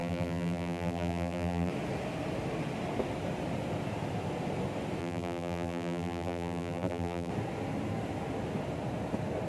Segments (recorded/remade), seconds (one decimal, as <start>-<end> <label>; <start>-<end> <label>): 0.0-1.7 remade; 1.7-5.0 recorded; 5.0-7.3 remade; 7.3-9.5 recorded